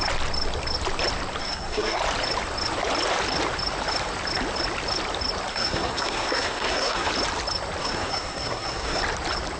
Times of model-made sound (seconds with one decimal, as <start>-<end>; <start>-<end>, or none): 1.4-2.0; 5.5-7.1; 7.8-9.0